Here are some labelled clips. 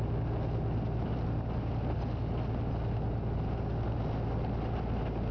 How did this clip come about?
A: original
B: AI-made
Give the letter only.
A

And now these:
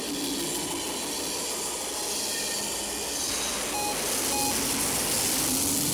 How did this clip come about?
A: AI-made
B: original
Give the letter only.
B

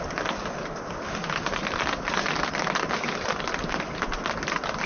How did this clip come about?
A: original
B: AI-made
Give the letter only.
A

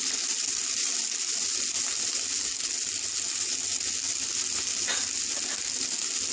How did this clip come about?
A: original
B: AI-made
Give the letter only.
A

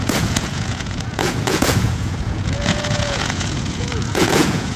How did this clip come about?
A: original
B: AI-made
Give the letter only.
B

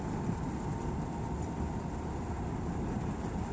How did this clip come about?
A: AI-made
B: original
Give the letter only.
B